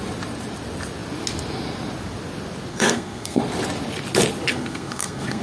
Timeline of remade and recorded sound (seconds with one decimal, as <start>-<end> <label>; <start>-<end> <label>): 0.0-2.7 recorded; 2.7-3.4 remade; 3.4-4.5 recorded; 4.5-5.4 remade